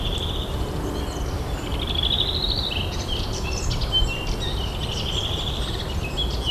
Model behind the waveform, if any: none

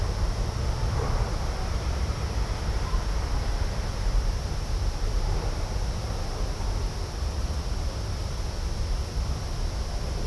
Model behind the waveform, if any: vocoder, BigVGAN v2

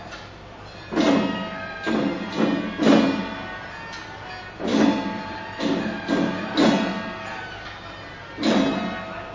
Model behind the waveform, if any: none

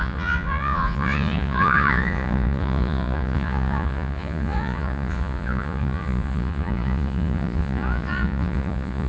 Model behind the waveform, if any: vocoder, Vocos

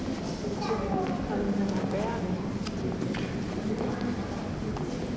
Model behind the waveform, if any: none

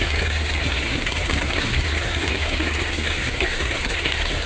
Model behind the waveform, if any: codec, SNAC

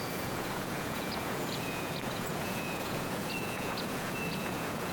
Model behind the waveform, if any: vocoder, Vocos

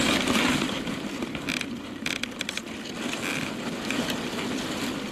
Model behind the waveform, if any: none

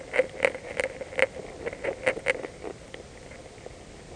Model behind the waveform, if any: none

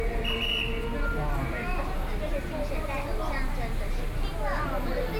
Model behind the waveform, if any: none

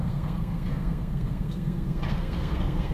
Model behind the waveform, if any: codec, SNAC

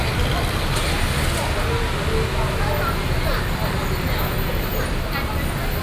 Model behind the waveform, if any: none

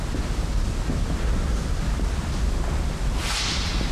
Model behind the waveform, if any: none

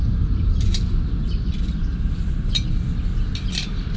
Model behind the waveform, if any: none